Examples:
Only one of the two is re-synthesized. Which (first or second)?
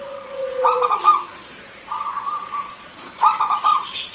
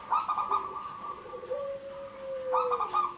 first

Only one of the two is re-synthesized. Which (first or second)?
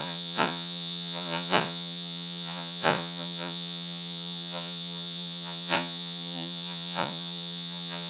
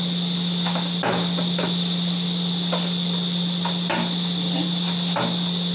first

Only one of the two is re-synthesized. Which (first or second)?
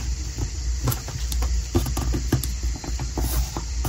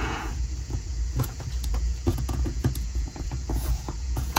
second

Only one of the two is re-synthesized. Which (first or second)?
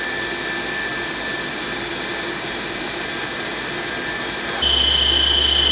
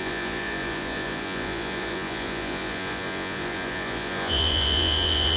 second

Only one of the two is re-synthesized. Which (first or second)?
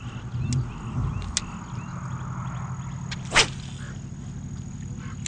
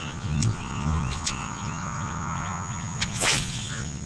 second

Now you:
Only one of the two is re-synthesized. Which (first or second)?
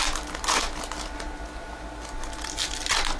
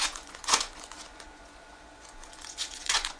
second